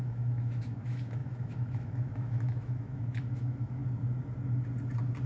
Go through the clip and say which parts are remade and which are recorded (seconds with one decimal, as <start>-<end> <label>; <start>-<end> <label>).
0.0-3.8 remade; 3.8-5.3 recorded